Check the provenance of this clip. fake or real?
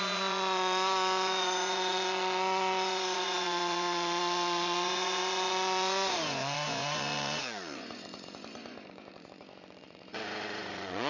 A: fake